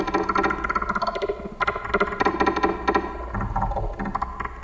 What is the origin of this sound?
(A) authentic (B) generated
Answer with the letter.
A